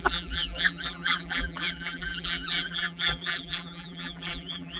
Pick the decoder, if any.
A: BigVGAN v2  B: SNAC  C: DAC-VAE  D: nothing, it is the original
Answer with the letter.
A